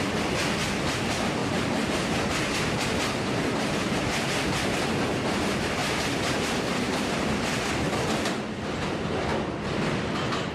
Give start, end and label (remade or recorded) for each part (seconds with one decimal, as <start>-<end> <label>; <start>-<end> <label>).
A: 0.0-1.4 recorded; 1.4-4.3 remade; 4.3-5.8 recorded; 5.8-7.9 remade; 7.9-10.5 recorded